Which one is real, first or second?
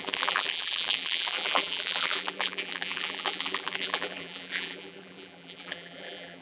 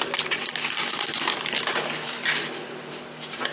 second